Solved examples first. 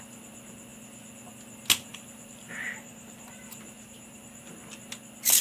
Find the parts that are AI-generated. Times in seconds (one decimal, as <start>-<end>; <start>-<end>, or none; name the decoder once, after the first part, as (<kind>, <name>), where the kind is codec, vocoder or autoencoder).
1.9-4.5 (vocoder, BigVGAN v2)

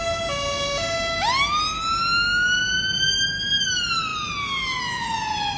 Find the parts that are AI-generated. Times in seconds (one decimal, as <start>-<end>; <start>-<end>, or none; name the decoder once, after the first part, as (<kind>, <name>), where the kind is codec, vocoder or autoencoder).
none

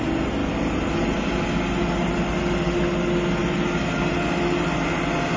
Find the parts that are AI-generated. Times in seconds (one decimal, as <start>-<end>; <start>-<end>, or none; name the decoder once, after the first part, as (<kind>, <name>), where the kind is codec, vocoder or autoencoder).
none